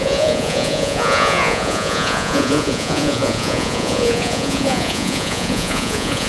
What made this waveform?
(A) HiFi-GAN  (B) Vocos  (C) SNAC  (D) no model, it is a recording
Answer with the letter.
B